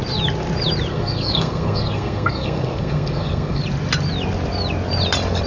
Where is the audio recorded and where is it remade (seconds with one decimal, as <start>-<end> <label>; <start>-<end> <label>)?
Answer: 0.0-0.9 recorded; 0.9-3.6 remade; 3.6-5.5 recorded